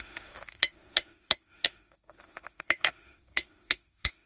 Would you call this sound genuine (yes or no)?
no